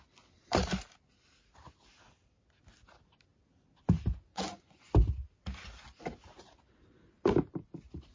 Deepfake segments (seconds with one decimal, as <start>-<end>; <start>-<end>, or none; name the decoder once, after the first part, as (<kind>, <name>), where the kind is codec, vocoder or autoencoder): 4.3-4.9 (vocoder, Vocos)